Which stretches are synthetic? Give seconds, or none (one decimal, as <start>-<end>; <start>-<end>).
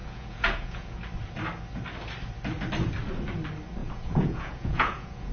0.0-1.0; 3.8-5.3